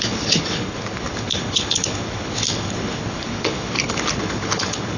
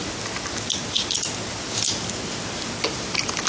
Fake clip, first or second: first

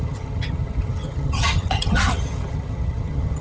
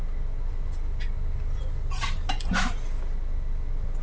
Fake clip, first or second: first